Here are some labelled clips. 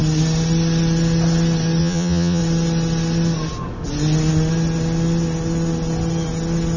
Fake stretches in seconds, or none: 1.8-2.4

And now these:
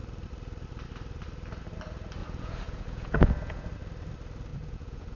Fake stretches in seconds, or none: 2.2-3.7; 4.5-5.2